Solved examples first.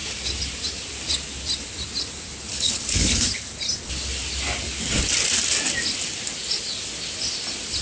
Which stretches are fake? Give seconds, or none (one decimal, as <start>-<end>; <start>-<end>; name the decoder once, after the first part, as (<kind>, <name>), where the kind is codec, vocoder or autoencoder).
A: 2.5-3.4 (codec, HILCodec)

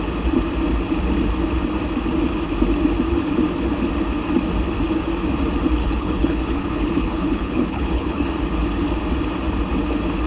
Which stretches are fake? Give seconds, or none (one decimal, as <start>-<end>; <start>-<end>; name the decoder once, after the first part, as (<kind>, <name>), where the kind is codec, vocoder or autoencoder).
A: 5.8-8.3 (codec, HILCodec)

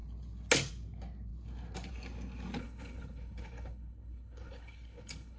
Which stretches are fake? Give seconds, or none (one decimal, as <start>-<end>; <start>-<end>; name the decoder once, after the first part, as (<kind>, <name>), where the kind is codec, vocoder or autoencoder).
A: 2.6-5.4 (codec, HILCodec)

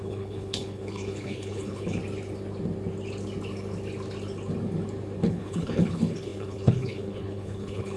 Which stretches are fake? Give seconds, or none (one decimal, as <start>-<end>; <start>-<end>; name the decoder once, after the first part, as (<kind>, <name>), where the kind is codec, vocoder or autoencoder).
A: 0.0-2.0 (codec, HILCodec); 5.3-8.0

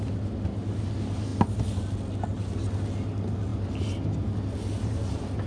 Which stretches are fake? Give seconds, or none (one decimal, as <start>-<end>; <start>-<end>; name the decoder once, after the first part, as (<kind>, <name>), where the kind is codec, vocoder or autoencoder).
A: none

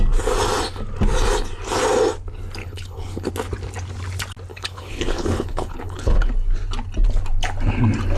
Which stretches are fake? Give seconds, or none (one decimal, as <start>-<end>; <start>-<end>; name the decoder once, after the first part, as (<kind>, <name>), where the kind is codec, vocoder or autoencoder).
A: 2.6-3.3 (codec, HILCodec); 4.5-6.3